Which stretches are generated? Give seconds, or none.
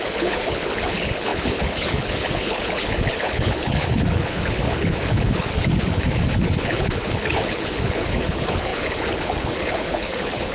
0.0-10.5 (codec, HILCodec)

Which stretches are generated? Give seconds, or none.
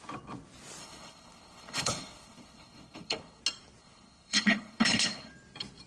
0.8-3.4 (codec, HILCodec); 3.8-5.3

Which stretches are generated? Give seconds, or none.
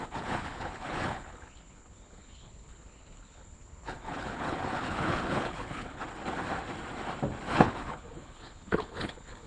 0.0-6.0 (codec, HILCodec); 7.5-9.5